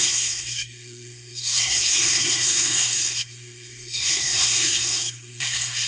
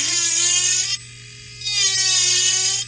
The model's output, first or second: first